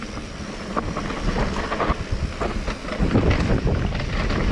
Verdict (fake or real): real